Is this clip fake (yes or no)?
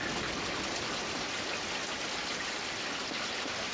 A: no